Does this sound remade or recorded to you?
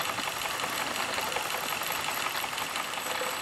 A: recorded